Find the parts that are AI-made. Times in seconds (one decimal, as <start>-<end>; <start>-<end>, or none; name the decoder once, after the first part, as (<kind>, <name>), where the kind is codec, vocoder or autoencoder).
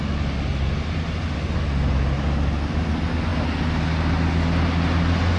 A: none